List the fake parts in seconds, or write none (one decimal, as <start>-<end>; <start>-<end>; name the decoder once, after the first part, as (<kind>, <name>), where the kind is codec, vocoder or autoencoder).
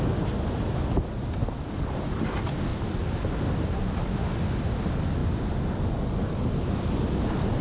2.7-3.2 (vocoder, BigVGAN v2)